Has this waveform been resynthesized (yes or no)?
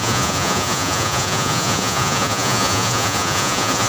yes